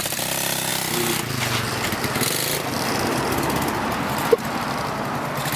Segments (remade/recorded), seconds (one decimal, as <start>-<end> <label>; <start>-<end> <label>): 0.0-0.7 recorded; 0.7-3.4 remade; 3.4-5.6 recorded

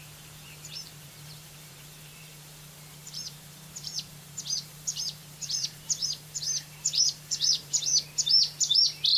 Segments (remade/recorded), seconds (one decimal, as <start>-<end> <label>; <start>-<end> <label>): 0.0-7.9 remade; 7.9-9.2 recorded

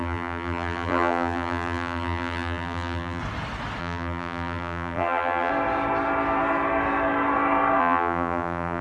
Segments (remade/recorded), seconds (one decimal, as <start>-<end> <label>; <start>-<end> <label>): 0.0-3.2 remade; 3.2-3.8 recorded; 3.8-5.5 remade; 5.5-7.8 recorded; 7.8-8.8 remade

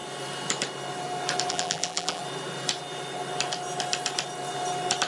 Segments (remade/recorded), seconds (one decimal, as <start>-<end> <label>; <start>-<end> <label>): 0.0-1.5 recorded; 1.5-2.2 remade; 2.2-5.1 recorded

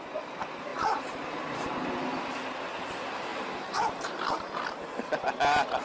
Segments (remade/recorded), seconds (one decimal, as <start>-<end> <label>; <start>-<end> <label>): 0.0-0.7 recorded; 0.7-1.9 remade; 1.9-3.3 recorded; 3.3-4.3 remade; 4.3-5.8 recorded